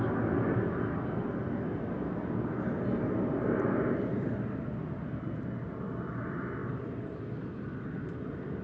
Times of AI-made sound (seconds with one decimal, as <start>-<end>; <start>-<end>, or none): 6.6-7.2